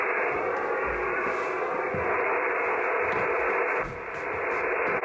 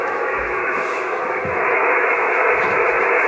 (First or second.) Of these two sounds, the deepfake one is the second